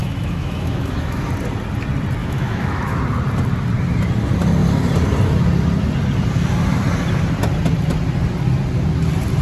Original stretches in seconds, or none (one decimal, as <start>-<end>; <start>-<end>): 1.3-2.2; 3.0-9.4